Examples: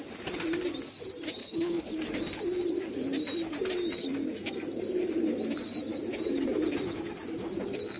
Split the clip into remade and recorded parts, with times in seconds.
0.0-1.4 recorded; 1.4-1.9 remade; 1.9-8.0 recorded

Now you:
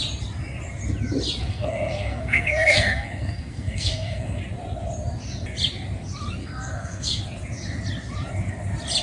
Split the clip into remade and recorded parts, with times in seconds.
0.0-1.5 recorded; 1.5-4.4 remade; 4.4-6.4 recorded; 6.4-7.2 remade; 7.2-9.0 recorded

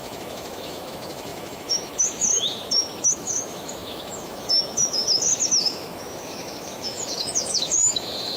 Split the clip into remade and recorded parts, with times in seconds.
0.0-8.4 remade

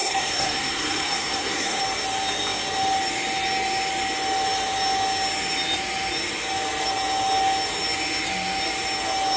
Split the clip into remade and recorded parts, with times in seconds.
0.0-1.8 remade; 1.8-9.4 recorded

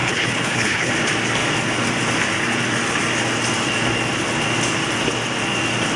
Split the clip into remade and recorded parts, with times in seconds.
0.0-0.9 remade; 0.9-6.0 recorded

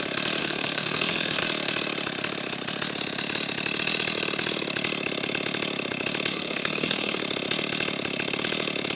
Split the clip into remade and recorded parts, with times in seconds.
0.0-0.4 recorded; 0.4-1.4 remade; 1.4-6.3 recorded; 6.3-7.2 remade; 7.2-8.9 recorded